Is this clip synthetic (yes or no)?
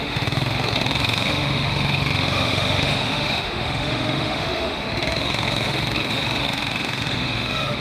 yes